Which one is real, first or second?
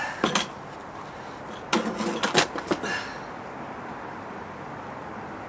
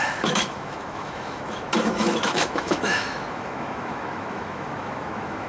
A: first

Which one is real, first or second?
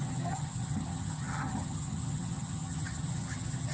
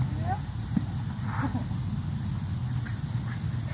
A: second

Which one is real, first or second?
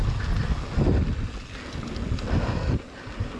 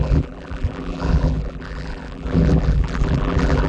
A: first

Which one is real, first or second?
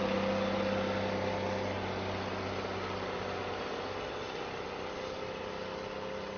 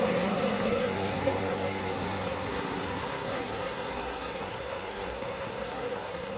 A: first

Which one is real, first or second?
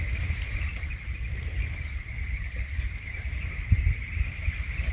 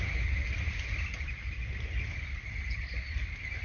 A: second